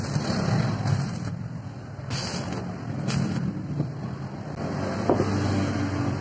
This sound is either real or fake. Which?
real